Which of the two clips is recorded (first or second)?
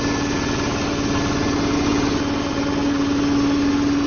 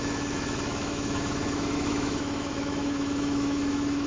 first